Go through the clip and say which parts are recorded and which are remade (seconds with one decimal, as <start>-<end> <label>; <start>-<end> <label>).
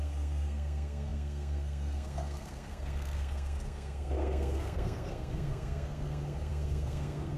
0.0-7.4 remade